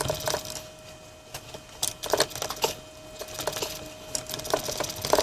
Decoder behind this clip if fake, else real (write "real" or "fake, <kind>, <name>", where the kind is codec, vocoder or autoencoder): real